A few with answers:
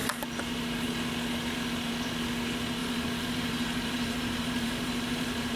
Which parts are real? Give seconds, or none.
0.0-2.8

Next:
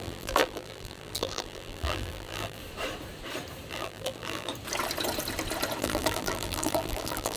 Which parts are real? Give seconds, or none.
2.6-3.7; 4.5-5.8

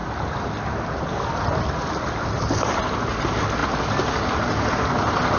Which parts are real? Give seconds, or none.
0.0-5.4